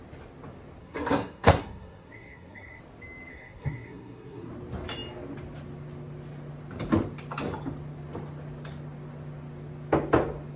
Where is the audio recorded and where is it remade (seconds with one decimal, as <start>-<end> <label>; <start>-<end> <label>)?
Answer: 0.0-0.8 recorded; 0.8-2.8 remade; 2.8-3.3 recorded; 3.3-4.5 remade; 4.5-10.6 recorded